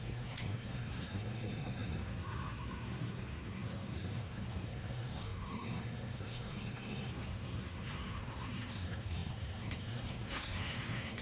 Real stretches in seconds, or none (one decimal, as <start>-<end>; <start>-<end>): none

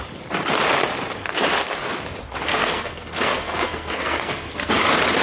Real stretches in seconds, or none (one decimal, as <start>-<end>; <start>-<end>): 0.0-2.5; 4.7-5.2